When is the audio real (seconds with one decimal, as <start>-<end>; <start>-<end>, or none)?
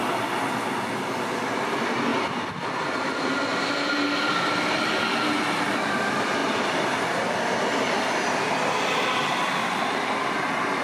0.0-2.1; 2.8-3.5; 4.3-10.8